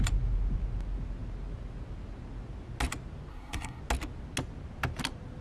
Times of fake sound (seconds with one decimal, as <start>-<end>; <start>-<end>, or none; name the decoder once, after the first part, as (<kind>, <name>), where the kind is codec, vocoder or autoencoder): 3.3-3.8 (codec, SNAC)